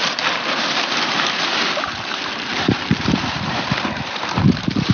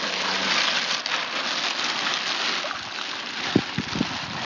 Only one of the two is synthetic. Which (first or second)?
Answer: first